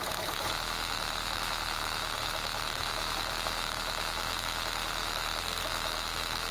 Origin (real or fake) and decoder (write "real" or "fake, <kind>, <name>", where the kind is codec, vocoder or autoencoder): fake, autoencoder, DAC-VAE